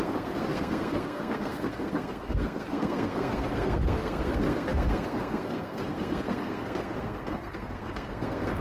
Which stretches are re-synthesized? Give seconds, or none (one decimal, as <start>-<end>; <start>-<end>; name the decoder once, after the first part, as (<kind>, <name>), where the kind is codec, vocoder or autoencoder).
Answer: 0.0-8.6 (codec, SNAC)